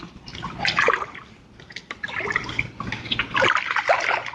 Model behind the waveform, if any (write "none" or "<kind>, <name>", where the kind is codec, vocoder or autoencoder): none